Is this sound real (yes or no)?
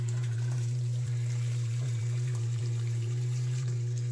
no